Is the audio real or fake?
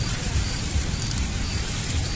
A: fake